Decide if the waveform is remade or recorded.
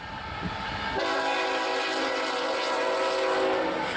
recorded